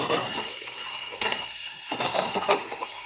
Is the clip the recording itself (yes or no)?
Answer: no